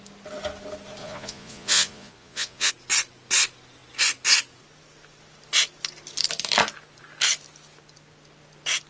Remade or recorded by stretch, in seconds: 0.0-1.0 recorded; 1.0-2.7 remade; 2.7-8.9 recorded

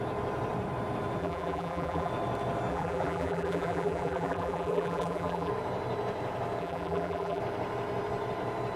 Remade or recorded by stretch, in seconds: 0.0-1.2 recorded; 1.2-2.1 remade; 2.1-2.7 recorded; 2.7-5.5 remade; 5.5-6.6 recorded; 6.6-7.4 remade; 7.4-8.8 recorded